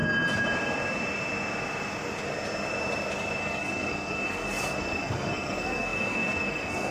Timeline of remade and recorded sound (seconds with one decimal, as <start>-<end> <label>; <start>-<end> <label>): 0.0-3.4 recorded; 3.4-6.9 remade